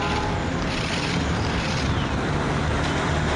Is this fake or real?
fake